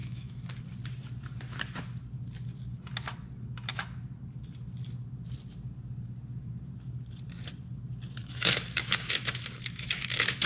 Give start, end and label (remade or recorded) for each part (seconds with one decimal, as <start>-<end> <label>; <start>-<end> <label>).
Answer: 0.0-0.6 remade; 0.6-8.2 recorded; 8.2-10.5 remade